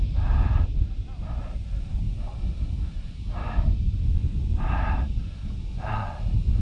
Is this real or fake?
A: real